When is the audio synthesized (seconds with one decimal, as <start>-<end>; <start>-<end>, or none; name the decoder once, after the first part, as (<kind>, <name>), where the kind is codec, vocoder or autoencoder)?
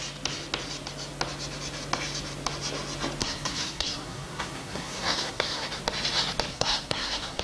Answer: 3.2-5.8 (codec, SNAC); 6.5-7.4